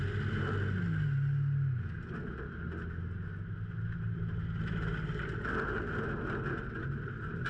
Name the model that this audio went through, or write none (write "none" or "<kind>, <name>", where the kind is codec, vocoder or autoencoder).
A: none